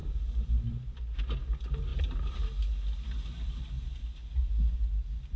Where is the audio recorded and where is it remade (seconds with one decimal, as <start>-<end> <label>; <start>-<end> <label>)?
0.0-5.4 recorded